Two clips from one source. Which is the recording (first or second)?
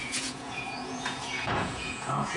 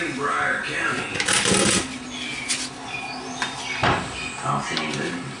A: second